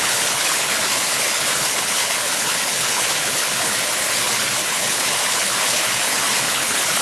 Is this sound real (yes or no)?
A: no